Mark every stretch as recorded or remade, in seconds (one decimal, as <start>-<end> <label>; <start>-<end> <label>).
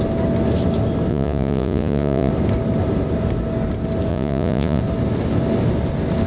0.0-1.1 recorded; 1.1-2.3 remade; 2.3-4.1 recorded; 4.1-4.8 remade; 4.8-6.3 recorded